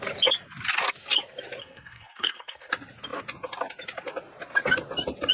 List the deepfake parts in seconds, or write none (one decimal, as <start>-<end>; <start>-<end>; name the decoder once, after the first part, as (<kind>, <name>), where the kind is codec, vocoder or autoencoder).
1.6-2.7 (codec, SNAC)